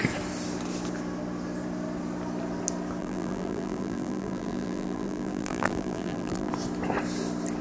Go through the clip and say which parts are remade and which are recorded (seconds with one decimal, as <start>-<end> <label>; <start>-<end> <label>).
0.0-3.0 recorded; 3.0-6.5 remade; 6.5-7.6 recorded